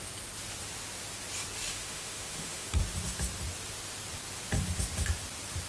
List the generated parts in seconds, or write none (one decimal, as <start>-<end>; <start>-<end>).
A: 1.7-2.7